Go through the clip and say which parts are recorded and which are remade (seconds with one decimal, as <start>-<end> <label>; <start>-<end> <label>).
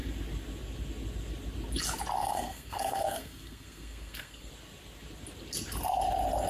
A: 0.0-2.2 recorded; 2.2-4.5 remade; 4.5-6.5 recorded